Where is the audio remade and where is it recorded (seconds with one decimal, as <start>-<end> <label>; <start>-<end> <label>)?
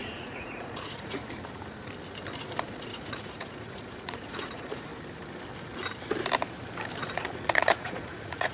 0.0-1.2 remade; 1.2-2.8 recorded; 2.8-4.9 remade; 4.9-7.0 recorded; 7.0-8.5 remade